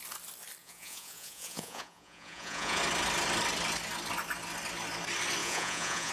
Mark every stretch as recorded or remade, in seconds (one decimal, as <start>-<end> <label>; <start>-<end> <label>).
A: 0.0-0.6 recorded; 0.6-2.8 remade; 2.8-5.4 recorded; 5.4-6.1 remade